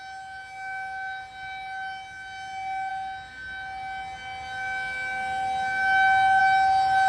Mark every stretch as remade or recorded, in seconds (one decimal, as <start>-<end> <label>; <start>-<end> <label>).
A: 0.0-7.1 recorded